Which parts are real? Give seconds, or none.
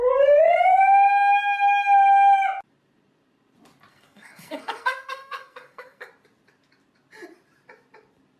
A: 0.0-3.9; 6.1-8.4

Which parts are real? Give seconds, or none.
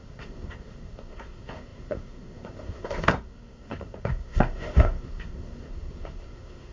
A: none